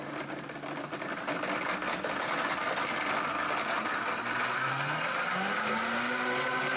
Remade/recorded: recorded